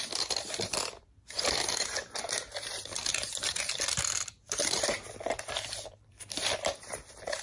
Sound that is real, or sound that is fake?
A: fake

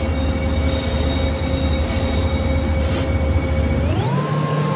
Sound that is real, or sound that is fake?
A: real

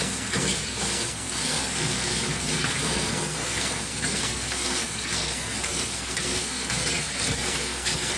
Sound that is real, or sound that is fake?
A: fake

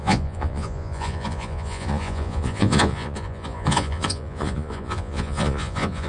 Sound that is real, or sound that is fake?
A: fake